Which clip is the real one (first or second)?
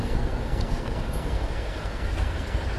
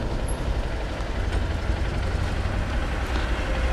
second